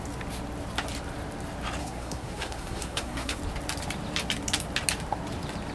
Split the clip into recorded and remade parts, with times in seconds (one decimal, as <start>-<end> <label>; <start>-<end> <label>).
0.0-1.8 recorded; 1.8-3.4 remade; 3.4-5.7 recorded

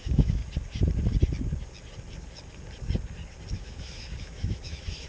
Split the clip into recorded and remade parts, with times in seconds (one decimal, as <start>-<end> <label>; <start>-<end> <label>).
0.0-0.4 remade; 0.4-3.5 recorded; 3.5-5.1 remade

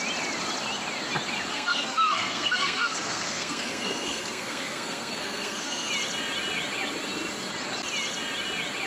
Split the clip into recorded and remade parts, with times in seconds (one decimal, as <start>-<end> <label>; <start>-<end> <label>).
0.0-1.5 recorded; 1.5-5.9 remade; 5.9-8.9 recorded

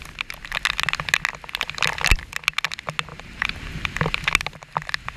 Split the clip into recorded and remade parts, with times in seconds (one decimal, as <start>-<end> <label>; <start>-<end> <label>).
0.0-3.1 recorded; 3.1-3.8 remade; 3.8-5.2 recorded